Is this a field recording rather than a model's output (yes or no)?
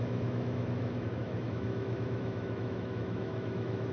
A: no